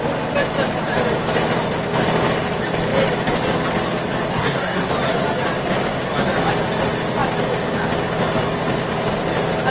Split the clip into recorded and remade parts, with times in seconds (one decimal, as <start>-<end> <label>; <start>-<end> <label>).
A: 0.0-4.3 recorded; 4.3-4.9 remade; 4.9-9.7 recorded